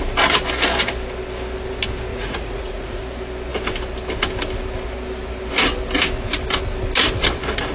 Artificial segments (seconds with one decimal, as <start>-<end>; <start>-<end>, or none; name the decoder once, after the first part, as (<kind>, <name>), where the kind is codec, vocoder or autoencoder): 2.1-3.0 (vocoder, Vocos)